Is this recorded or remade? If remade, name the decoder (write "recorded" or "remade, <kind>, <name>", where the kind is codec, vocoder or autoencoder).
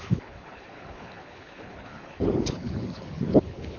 remade, codec, HILCodec